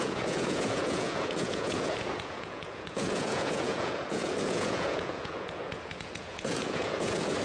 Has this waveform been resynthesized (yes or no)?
yes